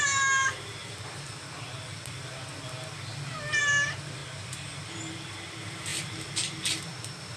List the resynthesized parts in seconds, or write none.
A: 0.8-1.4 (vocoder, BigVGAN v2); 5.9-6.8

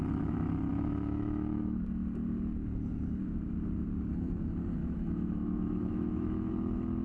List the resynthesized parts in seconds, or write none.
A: 0.7-1.8 (autoencoder, DAC-VAE); 4.8-6.5

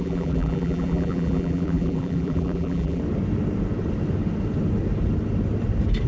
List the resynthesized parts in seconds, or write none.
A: 0.0-3.0 (vocoder, BigVGAN v2)

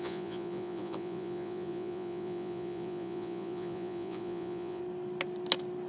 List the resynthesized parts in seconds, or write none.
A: 0.0-4.8 (vocoder, Vocos)

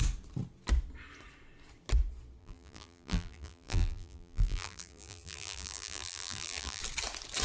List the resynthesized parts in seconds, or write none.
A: 2.4-6.8 (vocoder, BigVGAN v2)